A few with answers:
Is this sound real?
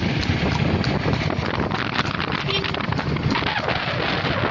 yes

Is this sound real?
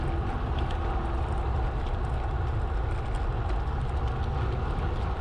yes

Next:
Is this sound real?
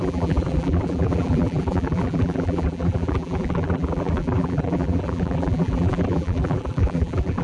no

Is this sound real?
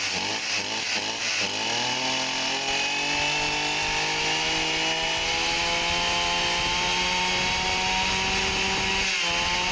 yes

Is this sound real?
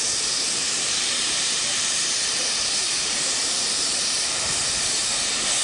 no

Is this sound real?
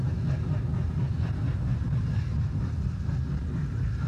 yes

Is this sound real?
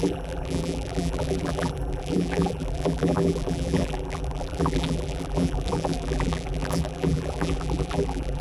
no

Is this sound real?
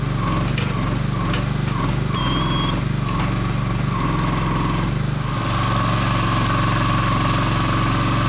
yes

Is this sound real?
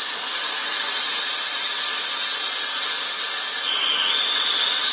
yes